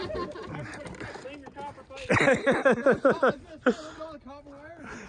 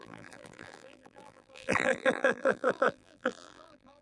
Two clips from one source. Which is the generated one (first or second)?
second